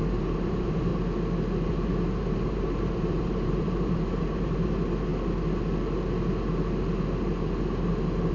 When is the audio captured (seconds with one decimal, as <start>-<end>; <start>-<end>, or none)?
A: 0.9-1.7; 5.1-8.3